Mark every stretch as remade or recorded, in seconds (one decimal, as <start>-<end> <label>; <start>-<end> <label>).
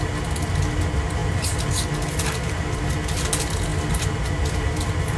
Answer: 0.0-5.2 recorded